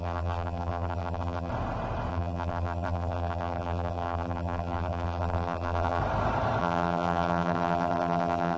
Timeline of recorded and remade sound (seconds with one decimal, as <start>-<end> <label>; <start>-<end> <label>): 0.0-1.5 remade; 1.5-2.1 recorded; 2.1-6.0 remade; 6.0-6.6 recorded; 6.6-8.6 remade